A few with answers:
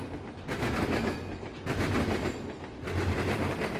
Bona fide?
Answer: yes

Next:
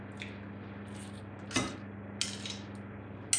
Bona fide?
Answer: yes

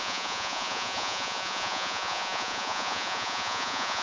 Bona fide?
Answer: no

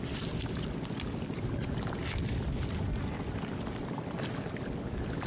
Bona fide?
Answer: yes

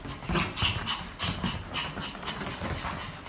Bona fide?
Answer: yes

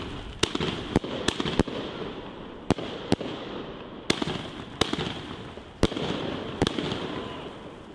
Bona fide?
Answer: yes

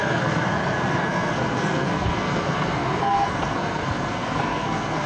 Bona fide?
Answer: no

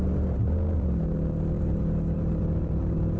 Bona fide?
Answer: yes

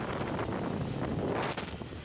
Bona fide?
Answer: yes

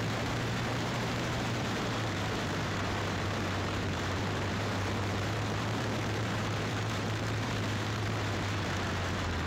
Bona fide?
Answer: no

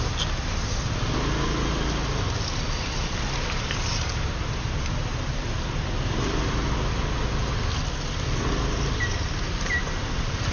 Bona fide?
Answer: yes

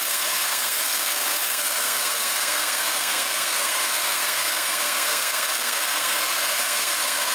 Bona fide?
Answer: no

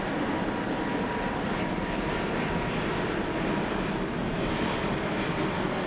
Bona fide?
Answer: yes